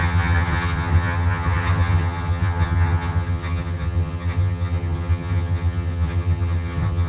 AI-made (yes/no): yes